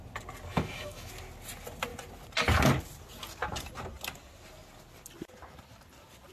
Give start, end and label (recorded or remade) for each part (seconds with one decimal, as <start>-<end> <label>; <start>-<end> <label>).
0.0-0.5 recorded; 0.5-1.1 remade; 1.1-6.3 recorded